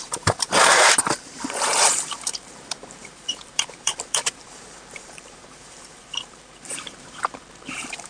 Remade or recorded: remade